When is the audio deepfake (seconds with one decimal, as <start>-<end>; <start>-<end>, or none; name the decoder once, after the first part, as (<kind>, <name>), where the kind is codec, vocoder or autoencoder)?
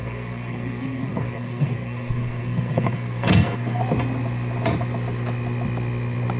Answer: 0.0-3.8 (codec, SNAC)